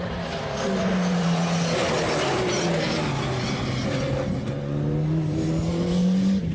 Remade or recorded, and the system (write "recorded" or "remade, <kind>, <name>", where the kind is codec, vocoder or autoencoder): recorded